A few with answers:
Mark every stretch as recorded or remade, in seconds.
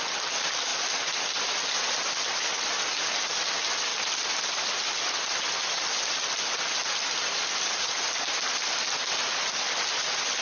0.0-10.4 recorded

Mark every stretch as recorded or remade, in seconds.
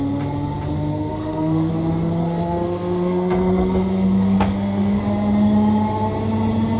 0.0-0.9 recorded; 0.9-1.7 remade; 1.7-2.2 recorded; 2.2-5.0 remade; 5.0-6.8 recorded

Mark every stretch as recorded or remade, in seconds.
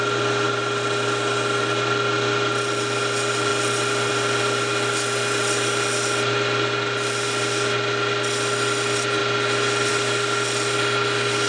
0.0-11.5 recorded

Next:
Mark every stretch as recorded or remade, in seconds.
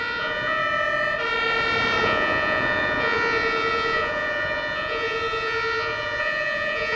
0.0-0.6 remade; 0.6-2.0 recorded; 2.0-7.0 remade